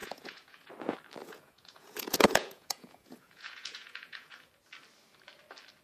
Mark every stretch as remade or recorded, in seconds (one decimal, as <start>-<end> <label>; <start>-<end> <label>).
0.0-0.7 remade; 0.7-1.2 recorded; 1.2-4.5 remade; 4.5-5.8 recorded

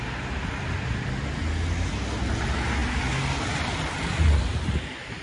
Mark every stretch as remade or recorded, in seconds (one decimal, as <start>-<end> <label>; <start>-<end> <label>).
0.0-5.2 recorded

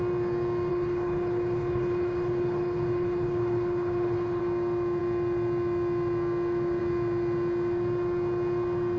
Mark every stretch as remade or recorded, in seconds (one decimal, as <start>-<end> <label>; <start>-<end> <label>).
0.0-0.7 recorded; 0.7-4.4 remade; 4.4-9.0 recorded